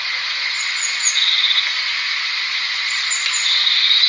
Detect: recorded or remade recorded